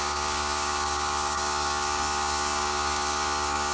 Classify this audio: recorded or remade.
remade